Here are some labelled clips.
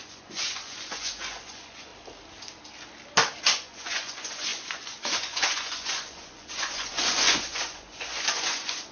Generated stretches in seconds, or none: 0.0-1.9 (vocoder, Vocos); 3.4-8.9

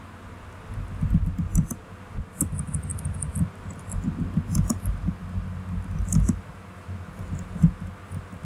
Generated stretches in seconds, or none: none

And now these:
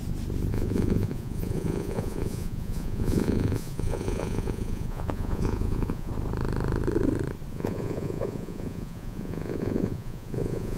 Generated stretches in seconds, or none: 0.5-6.1 (vocoder, Vocos); 7.5-10.8

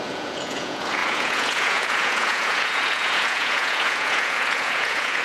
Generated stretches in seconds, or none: 0.0-5.2 (vocoder, Vocos)